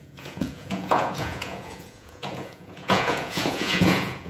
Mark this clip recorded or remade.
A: remade